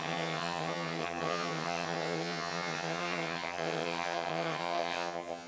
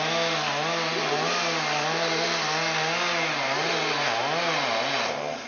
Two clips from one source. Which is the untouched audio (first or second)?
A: second